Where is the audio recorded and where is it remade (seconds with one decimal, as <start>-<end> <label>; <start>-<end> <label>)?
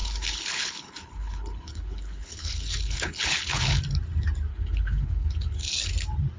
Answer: 0.0-3.8 remade; 3.8-4.5 recorded; 4.5-5.9 remade; 5.9-6.4 recorded